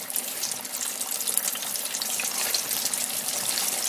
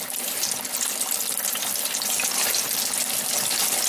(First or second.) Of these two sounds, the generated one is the first